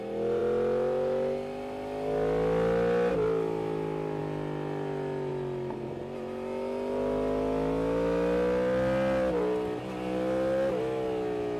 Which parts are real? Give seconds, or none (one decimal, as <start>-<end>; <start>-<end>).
0.0-11.6